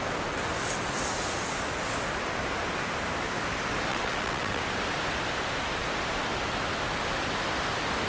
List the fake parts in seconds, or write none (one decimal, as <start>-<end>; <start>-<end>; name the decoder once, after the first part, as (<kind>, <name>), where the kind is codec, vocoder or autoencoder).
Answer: 3.9-4.6 (vocoder, WaveNeXt)